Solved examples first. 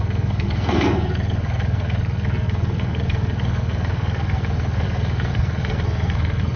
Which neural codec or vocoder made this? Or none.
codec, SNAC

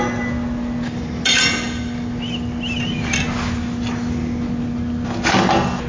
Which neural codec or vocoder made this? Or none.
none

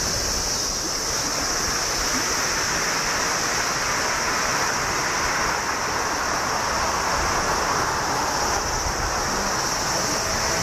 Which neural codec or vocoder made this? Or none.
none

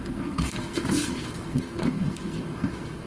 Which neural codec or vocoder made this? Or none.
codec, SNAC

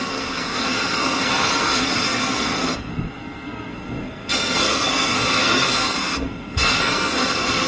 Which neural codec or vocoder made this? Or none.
codec, SNAC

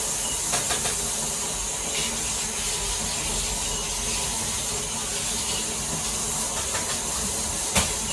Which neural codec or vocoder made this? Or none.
none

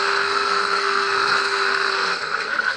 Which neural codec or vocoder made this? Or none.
codec, SNAC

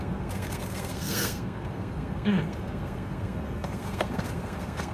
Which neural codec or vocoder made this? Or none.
codec, SNAC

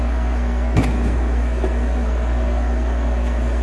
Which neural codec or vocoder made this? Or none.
codec, SNAC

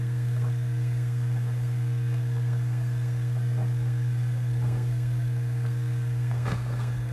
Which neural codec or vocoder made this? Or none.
codec, SNAC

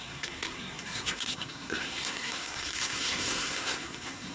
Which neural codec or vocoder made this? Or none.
codec, SNAC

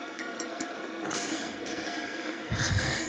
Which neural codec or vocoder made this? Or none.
codec, SNAC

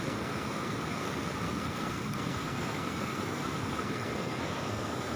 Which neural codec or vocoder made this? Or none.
codec, SNAC